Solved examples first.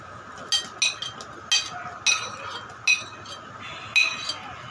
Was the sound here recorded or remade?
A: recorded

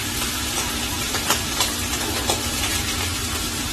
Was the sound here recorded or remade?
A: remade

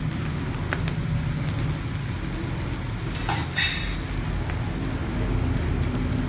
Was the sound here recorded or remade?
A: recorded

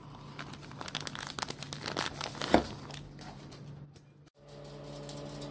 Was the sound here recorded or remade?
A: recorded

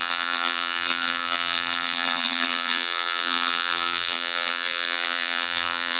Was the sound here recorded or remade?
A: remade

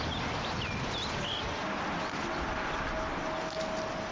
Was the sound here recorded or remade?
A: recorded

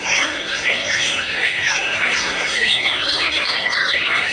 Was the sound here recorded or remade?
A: remade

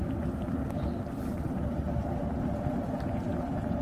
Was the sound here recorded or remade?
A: recorded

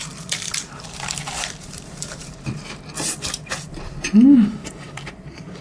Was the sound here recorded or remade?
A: remade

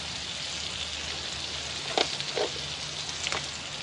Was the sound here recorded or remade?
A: recorded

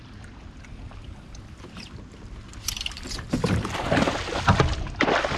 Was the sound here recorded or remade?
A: recorded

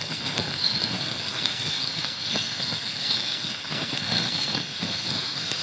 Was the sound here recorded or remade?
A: remade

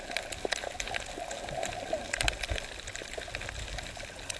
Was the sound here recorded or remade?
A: recorded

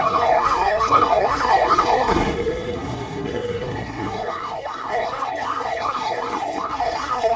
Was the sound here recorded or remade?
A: remade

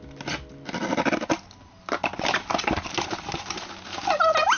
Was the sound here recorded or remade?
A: recorded